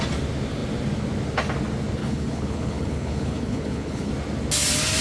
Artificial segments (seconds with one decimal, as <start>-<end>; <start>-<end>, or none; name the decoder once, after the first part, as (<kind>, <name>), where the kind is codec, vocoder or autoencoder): 2.0-4.1 (codec, HILCodec)